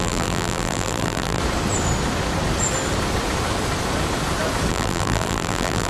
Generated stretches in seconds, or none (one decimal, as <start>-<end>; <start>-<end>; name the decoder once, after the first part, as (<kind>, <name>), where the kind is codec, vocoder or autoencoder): 0.0-1.4 (vocoder, BigVGAN v2); 4.7-5.9